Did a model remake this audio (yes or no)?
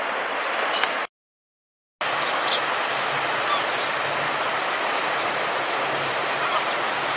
no